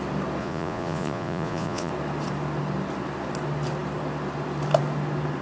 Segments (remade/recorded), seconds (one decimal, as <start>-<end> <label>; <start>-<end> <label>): 0.0-0.4 recorded; 0.4-1.9 remade; 1.9-5.4 recorded